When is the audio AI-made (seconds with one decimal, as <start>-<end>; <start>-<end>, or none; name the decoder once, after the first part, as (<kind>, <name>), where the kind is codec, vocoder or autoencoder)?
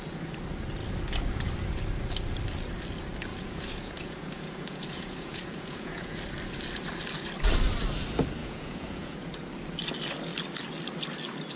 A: 3.3-6.2 (vocoder, Vocos); 8.4-9.3